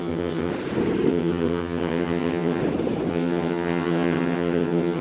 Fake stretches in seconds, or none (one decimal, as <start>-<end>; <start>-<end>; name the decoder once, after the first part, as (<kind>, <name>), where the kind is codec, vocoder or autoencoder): 0.0-0.5 (vocoder, HiFi-GAN); 1.1-2.6; 3.1-5.0